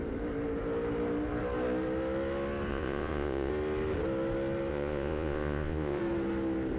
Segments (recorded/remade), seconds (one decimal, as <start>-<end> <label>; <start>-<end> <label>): 0.0-2.7 recorded; 2.7-3.5 remade; 3.5-4.7 recorded; 4.7-6.0 remade; 6.0-6.8 recorded